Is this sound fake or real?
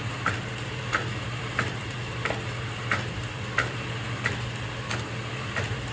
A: fake